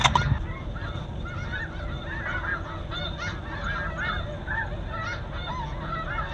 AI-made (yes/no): no